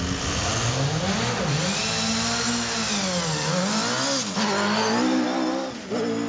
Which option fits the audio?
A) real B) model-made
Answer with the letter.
A